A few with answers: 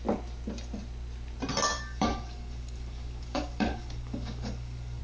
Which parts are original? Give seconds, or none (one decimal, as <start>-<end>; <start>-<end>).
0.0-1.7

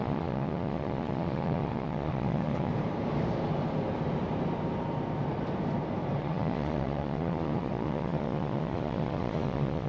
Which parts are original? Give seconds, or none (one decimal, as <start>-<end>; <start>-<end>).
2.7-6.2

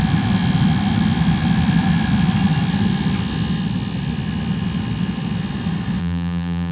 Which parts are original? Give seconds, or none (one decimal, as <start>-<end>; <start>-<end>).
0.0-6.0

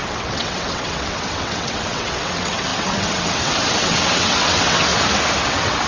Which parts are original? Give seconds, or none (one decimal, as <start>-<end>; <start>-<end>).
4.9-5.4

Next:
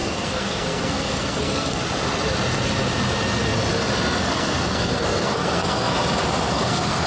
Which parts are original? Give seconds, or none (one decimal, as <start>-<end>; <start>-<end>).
1.8-4.2; 6.0-6.5